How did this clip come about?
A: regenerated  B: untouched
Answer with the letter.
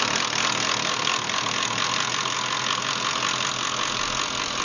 B